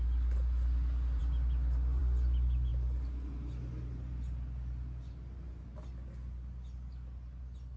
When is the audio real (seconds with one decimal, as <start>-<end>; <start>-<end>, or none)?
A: 0.0-7.8